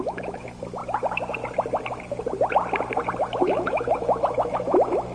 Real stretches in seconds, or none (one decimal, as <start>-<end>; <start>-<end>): 0.8-3.2